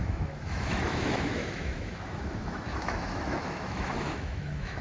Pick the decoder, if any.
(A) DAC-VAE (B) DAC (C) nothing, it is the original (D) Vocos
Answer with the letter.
A